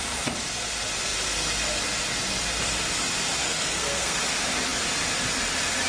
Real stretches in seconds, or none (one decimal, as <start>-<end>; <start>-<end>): 0.0-3.4; 4.2-5.9